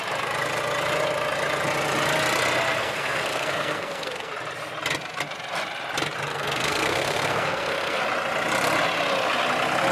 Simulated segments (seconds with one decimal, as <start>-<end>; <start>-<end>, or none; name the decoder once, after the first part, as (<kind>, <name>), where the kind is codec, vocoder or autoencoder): 2.8-4.3 (codec, SNAC); 6.3-8.0